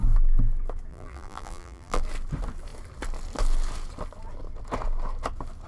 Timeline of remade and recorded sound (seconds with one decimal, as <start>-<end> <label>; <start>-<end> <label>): 0.0-0.9 recorded; 0.9-2.0 remade; 2.0-5.7 recorded